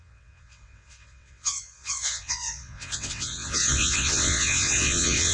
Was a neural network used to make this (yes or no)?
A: yes